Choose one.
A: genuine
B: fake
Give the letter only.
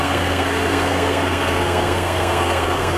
B